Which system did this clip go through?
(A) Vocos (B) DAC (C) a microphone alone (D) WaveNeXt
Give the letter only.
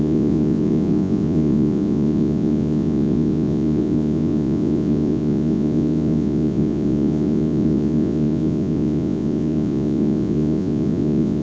A